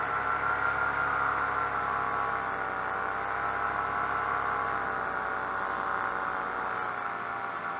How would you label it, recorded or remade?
recorded